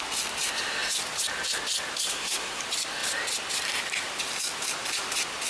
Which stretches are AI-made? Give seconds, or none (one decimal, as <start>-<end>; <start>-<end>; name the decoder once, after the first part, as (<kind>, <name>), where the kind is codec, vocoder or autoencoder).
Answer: 2.1-2.6 (codec, SNAC)